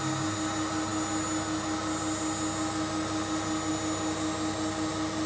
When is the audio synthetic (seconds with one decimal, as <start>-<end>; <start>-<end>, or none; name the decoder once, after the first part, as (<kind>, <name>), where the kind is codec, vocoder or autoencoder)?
none